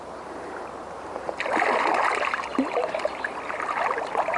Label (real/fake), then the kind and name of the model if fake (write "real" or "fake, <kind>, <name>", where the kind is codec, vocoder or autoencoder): real